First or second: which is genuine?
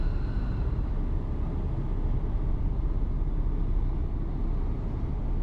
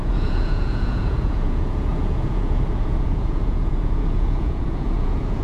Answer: first